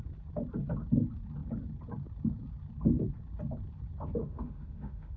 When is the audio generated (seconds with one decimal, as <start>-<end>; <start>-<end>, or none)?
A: 4.2-5.2